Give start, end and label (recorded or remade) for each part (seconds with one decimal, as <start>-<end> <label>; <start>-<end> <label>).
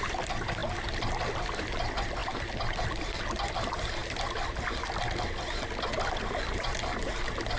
0.0-7.6 recorded